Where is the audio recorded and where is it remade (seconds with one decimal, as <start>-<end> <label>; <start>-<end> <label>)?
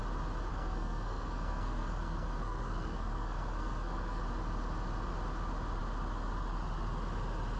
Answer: 0.0-0.5 recorded; 0.5-4.2 remade; 4.2-7.6 recorded